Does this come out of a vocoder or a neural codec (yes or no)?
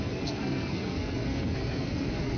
yes